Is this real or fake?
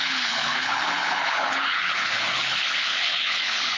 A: fake